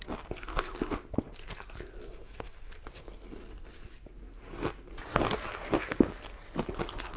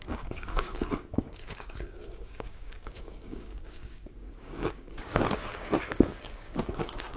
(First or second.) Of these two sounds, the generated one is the second